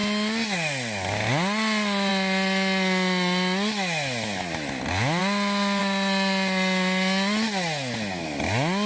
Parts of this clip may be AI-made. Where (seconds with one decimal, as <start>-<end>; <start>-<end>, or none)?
none